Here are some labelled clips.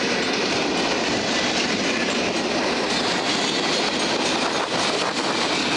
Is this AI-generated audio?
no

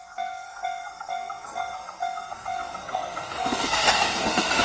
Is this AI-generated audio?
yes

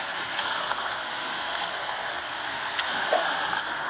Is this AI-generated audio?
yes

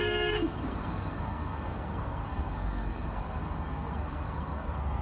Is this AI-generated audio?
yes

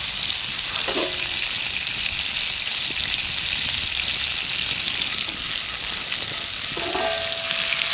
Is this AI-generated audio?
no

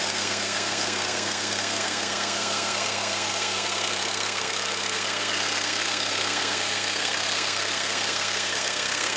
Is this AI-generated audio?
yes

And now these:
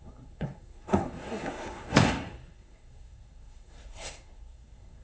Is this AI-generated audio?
yes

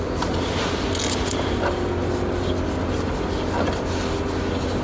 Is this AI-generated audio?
no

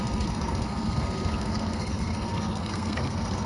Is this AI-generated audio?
yes